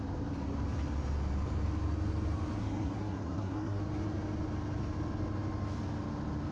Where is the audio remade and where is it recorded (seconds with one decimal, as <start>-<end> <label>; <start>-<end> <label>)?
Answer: 0.0-2.6 recorded; 2.6-3.8 remade; 3.8-6.5 recorded